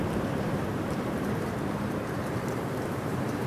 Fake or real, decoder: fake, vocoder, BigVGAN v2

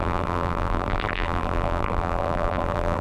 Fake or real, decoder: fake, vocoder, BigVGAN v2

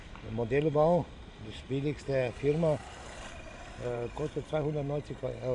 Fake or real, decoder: fake, vocoder, BigVGAN v2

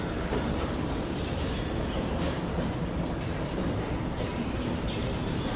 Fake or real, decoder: fake, vocoder, BigVGAN v2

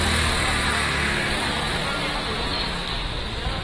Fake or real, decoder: real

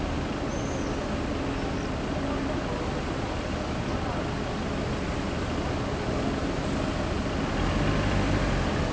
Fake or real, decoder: real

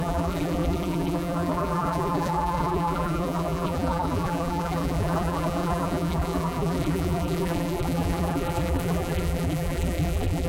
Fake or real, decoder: fake, vocoder, BigVGAN v2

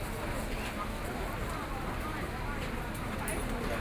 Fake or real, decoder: real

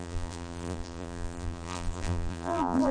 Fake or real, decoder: fake, vocoder, BigVGAN v2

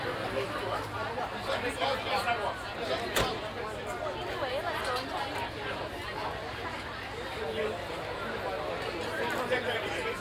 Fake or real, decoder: real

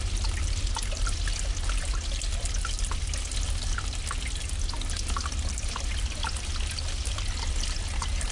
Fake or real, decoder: real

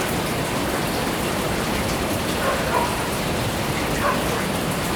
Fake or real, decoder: fake, vocoder, BigVGAN v2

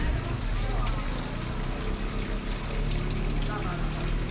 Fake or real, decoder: real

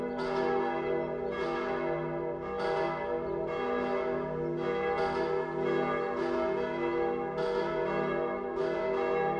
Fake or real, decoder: real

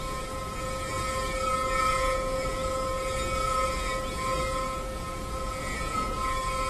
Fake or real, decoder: real